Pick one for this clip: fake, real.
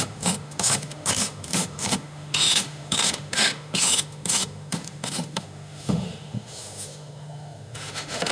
fake